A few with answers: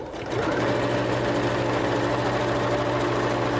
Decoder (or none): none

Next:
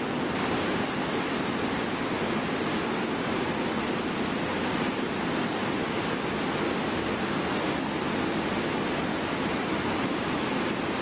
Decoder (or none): none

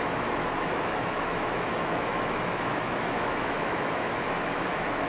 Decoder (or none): autoencoder, DAC-VAE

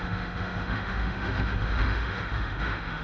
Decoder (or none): autoencoder, DAC-VAE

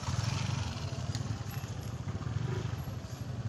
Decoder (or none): none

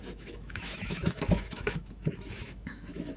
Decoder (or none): autoencoder, DAC-VAE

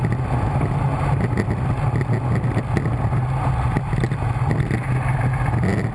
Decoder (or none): none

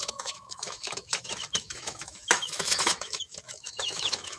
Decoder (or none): autoencoder, DAC-VAE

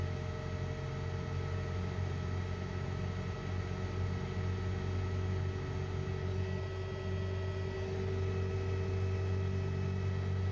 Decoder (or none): none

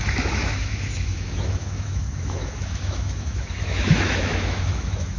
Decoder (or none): autoencoder, DAC-VAE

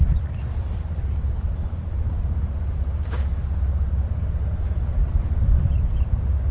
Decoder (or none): none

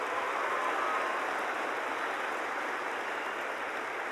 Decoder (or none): none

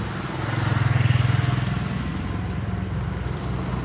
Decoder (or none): none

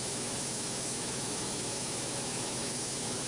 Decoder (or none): autoencoder, DAC-VAE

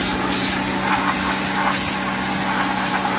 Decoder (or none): none